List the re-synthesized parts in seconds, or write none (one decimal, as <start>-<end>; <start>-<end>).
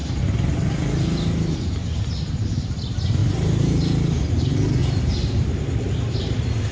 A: 0.0-0.7; 3.2-3.8; 4.8-6.0